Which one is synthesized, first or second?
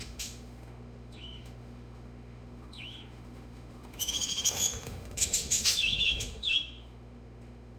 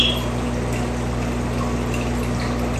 first